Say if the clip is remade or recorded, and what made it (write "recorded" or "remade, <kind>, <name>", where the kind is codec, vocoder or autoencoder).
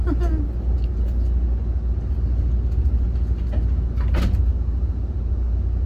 recorded